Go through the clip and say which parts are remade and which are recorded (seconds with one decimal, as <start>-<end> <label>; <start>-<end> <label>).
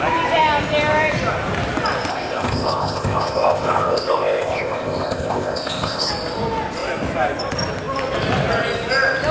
0.0-2.1 recorded; 2.1-6.1 remade; 6.1-9.3 recorded